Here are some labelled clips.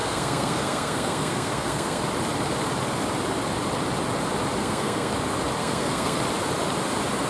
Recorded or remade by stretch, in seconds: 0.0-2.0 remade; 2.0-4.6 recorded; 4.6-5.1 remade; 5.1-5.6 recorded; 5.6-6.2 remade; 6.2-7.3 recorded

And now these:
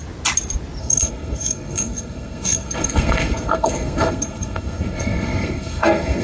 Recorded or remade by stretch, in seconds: 0.0-0.8 recorded; 0.8-6.2 remade

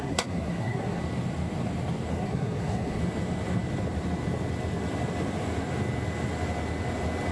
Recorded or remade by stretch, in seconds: 0.0-1.0 remade; 1.0-2.1 recorded; 2.1-3.0 remade; 3.0-7.3 recorded